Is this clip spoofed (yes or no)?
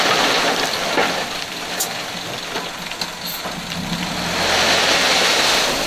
no